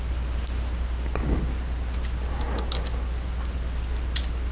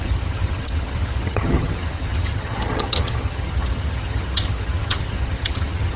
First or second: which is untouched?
first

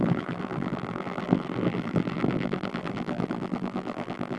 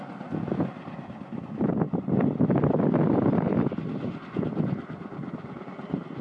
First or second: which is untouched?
second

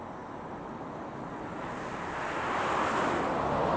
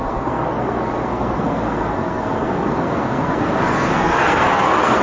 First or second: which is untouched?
first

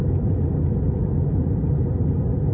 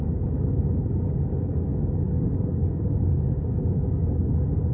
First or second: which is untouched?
first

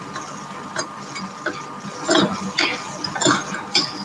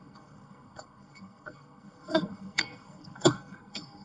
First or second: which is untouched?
first